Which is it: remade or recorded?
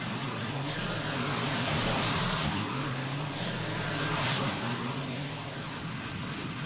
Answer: recorded